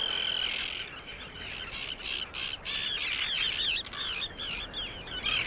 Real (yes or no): yes